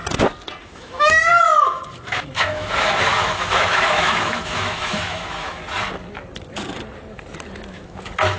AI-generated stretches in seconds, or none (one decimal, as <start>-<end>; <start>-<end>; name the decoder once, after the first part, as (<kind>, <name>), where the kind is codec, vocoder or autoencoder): 0.6-5.6 (autoencoder, DAC-VAE); 7.7-8.4

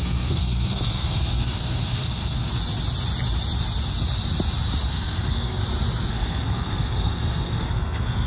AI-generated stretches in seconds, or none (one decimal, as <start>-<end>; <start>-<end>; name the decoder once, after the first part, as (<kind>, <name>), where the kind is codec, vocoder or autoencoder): 0.0-2.5 (codec, SNAC); 4.9-5.6; 6.1-8.3

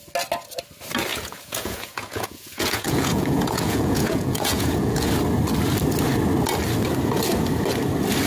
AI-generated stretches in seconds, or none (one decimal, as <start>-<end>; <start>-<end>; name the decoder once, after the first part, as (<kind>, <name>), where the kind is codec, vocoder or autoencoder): 1.1-5.1 (vocoder, Vocos)

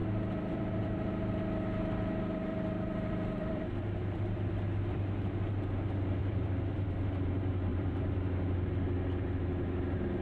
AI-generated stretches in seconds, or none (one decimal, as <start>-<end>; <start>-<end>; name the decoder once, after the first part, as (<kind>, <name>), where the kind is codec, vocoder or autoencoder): 0.0-1.1 (vocoder, BigVGAN v2); 2.5-5.0; 6.2-7.3; 7.7-8.3